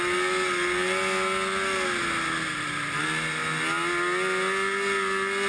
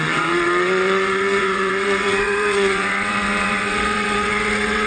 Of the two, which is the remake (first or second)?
second